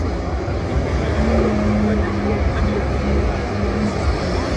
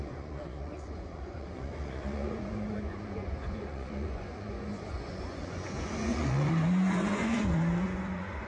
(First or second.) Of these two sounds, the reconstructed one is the second